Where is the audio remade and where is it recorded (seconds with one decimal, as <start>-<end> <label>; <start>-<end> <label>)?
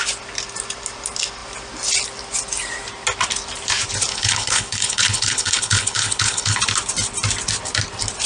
0.0-4.1 recorded; 4.1-6.6 remade; 6.6-8.3 recorded